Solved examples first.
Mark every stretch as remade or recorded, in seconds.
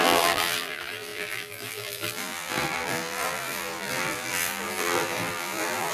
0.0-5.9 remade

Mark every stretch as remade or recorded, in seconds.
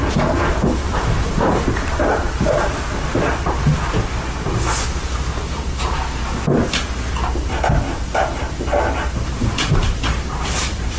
0.0-0.8 recorded; 0.8-2.7 remade; 2.7-11.0 recorded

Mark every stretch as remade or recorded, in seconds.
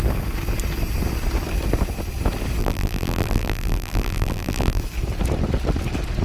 0.0-2.6 recorded; 2.6-4.8 remade; 4.8-6.2 recorded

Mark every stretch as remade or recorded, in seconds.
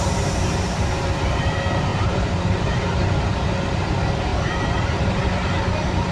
0.0-1.9 recorded; 1.9-3.1 remade; 3.1-4.3 recorded; 4.3-5.3 remade; 5.3-6.1 recorded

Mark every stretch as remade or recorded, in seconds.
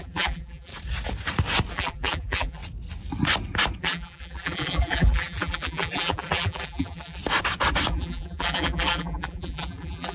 0.0-0.7 remade; 0.7-1.7 recorded; 1.7-2.6 remade; 2.6-3.8 recorded; 3.8-7.2 remade; 7.2-7.9 recorded; 7.9-10.1 remade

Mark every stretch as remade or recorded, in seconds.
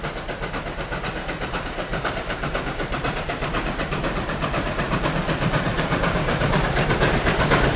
0.0-1.9 recorded; 1.9-6.6 remade; 6.6-7.8 recorded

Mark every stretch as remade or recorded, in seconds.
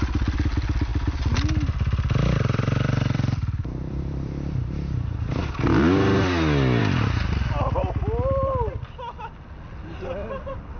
0.0-0.9 recorded; 0.9-5.4 remade; 5.4-10.8 recorded